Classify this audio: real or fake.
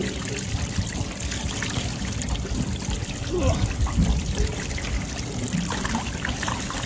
real